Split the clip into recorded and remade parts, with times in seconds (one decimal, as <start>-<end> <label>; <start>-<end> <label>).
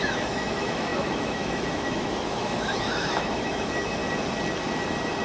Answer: 0.0-4.0 remade; 4.0-5.2 recorded